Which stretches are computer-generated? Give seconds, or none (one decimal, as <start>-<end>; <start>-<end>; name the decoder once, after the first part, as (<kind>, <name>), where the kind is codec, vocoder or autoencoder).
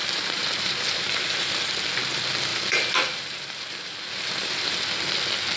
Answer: 0.0-1.7 (vocoder, BigVGAN v2); 2.5-4.8